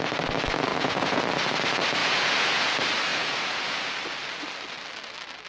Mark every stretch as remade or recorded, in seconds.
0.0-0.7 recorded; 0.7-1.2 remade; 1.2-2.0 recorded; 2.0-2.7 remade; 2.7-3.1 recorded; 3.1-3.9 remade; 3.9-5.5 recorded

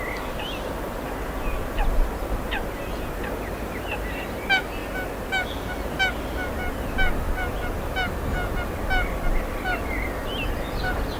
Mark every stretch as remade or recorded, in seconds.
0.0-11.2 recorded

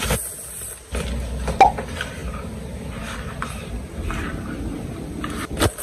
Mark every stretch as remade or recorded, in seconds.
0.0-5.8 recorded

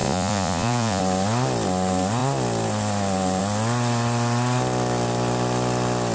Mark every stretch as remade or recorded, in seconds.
0.0-1.0 remade; 1.0-6.1 recorded

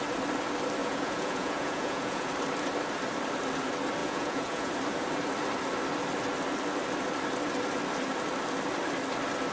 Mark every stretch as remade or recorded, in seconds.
0.0-0.8 recorded; 0.8-2.3 remade; 2.3-4.0 recorded; 4.0-4.7 remade; 4.7-9.5 recorded

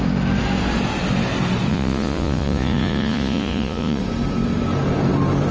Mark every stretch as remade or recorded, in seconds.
0.0-1.7 recorded; 1.7-4.0 remade; 4.0-5.5 recorded